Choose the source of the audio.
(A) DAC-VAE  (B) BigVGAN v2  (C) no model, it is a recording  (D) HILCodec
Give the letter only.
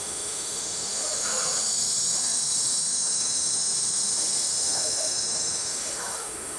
A